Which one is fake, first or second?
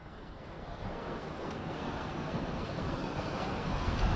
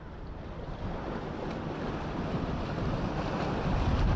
first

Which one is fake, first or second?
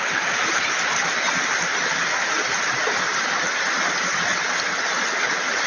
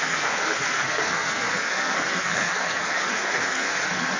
second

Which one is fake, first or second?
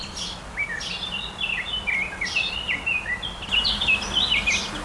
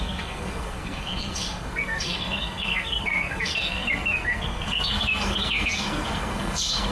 second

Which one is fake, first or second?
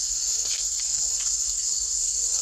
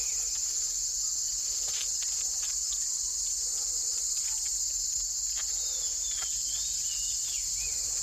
first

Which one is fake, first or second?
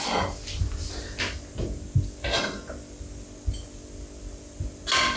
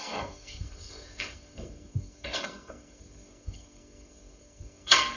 second